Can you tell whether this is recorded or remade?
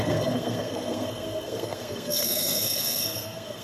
remade